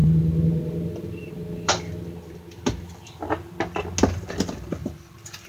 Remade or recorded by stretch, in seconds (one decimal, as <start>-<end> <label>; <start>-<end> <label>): 0.0-3.1 remade; 3.1-4.8 recorded; 4.8-5.5 remade